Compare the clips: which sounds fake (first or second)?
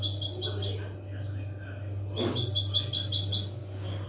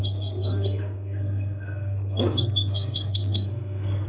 second